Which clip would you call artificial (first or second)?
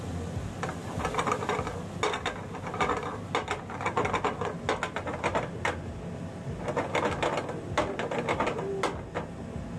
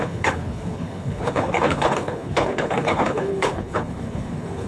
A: second